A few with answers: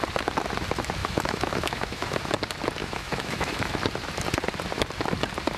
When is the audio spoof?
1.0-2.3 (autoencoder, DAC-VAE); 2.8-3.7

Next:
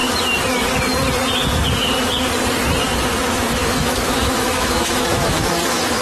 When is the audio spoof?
3.6-6.0 (autoencoder, DAC-VAE)

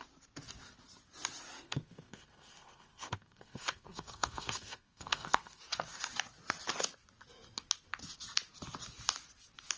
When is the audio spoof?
1.6-5.6 (codec, SNAC)